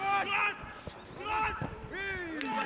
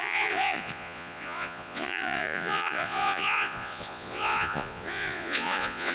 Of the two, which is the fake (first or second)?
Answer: second